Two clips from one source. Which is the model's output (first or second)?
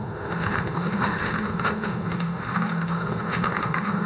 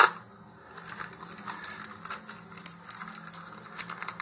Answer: first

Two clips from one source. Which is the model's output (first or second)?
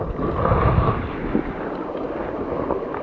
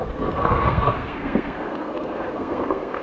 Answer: second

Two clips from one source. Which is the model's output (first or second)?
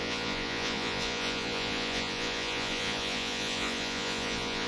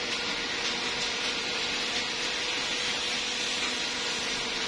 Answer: first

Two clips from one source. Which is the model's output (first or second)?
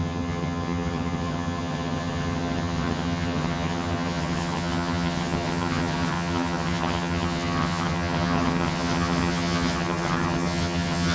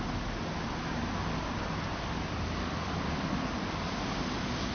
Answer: first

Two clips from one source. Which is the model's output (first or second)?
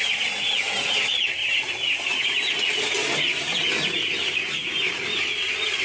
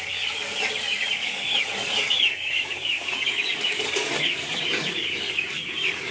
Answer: second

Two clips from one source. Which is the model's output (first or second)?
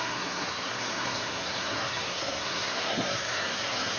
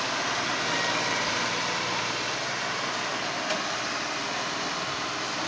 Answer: first